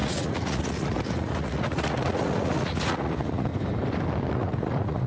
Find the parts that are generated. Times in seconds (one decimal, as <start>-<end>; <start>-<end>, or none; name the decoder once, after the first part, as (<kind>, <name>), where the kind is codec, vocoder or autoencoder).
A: 0.0-3.5 (vocoder, Vocos); 4.3-5.1